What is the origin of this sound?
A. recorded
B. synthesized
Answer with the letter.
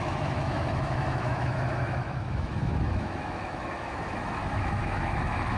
B